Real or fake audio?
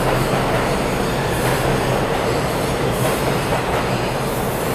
real